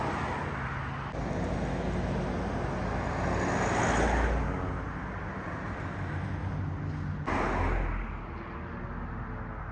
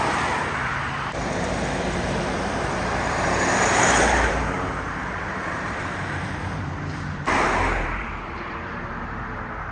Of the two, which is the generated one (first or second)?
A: second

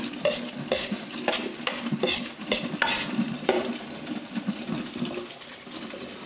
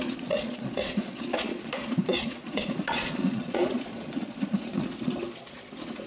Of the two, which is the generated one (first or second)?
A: second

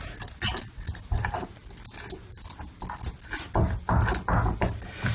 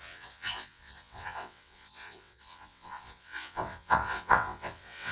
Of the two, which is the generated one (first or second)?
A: second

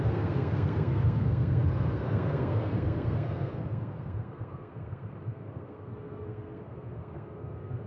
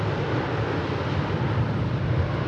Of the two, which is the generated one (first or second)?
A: first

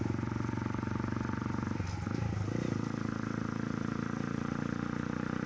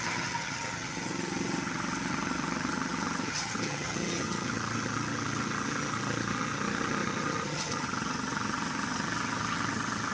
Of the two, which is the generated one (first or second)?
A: second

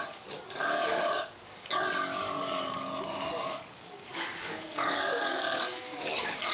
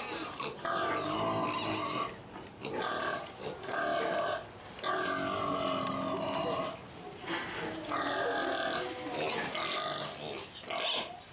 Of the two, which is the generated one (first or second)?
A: first